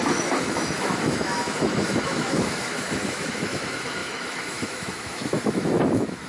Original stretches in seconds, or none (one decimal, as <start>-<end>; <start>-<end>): none